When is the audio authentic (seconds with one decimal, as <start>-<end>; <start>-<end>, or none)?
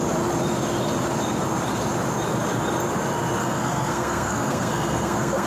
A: 0.0-3.4